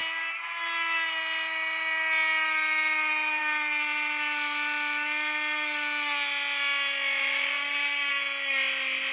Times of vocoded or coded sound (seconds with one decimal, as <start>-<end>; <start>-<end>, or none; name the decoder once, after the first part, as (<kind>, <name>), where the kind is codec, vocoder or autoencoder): 7.2-8.1 (codec, DAC)